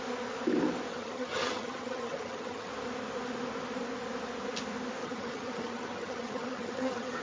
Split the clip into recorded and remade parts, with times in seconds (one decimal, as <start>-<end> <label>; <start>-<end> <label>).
0.0-0.9 recorded; 0.9-2.7 remade; 2.7-5.0 recorded; 5.0-7.2 remade